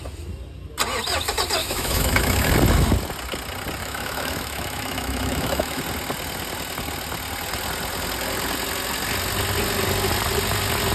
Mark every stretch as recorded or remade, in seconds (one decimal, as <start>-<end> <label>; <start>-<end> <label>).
0.0-1.6 recorded; 1.6-2.5 remade; 2.5-3.8 recorded; 3.8-5.8 remade; 5.8-10.9 recorded